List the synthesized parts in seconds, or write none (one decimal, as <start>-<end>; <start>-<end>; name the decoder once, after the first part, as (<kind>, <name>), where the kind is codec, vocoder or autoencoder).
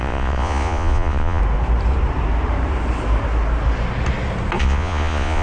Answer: 0.0-1.4 (vocoder, Vocos); 4.6-5.4